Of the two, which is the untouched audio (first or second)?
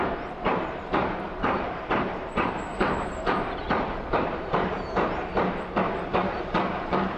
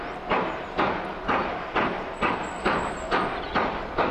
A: second